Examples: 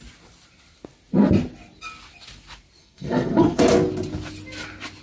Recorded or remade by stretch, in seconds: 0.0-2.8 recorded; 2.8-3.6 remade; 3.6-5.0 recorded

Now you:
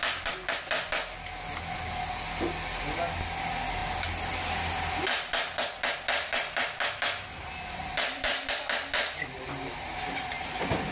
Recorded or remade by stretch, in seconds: 0.0-10.9 recorded

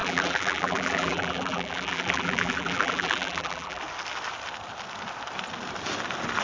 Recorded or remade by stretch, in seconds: 0.0-3.8 remade; 3.8-6.4 recorded

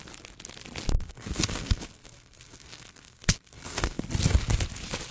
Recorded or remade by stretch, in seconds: 0.0-0.9 recorded; 0.9-4.0 remade; 4.0-5.1 recorded

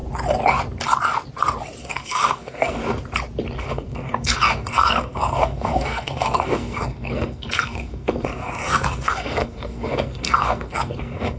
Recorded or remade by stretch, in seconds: 0.0-1.8 recorded; 1.8-2.8 remade; 2.8-3.6 recorded; 3.6-11.4 remade

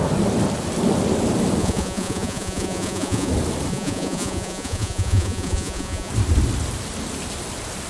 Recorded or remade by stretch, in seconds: 0.0-1.6 recorded; 1.6-3.3 remade; 3.3-3.7 recorded; 3.7-6.1 remade; 6.1-7.9 recorded